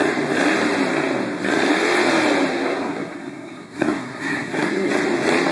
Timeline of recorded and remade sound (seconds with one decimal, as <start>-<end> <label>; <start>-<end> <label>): 0.0-2.5 recorded; 2.5-4.9 remade; 4.9-5.5 recorded